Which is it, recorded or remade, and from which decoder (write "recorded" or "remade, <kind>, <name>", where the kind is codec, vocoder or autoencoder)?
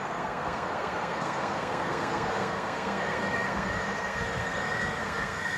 remade, codec, SNAC